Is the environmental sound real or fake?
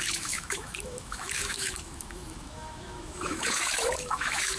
fake